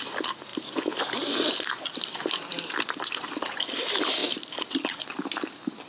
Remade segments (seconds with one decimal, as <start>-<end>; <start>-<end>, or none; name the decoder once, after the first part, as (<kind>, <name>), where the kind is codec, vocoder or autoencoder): none